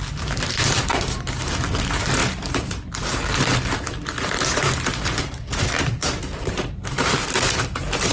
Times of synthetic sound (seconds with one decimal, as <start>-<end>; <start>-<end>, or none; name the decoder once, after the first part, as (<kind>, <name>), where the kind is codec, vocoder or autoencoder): 0.0-3.2 (vocoder, BigVGAN v2); 4.2-8.1